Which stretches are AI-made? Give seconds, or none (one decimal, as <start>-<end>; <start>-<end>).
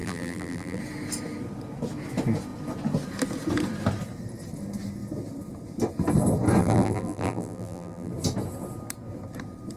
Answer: 0.0-0.8; 6.6-8.1